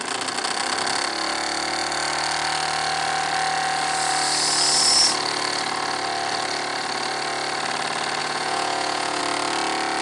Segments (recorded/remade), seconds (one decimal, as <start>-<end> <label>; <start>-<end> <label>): 0.0-8.2 recorded; 8.2-9.2 remade; 9.2-10.0 recorded